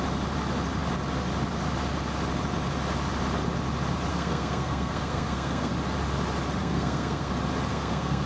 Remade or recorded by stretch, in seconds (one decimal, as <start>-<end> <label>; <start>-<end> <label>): 0.0-4.1 recorded; 4.1-5.7 remade; 5.7-6.6 recorded; 6.6-7.3 remade; 7.3-7.7 recorded; 7.7-8.3 remade